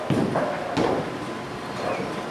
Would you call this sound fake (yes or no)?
no